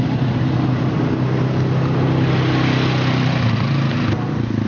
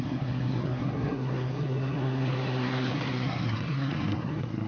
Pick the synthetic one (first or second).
second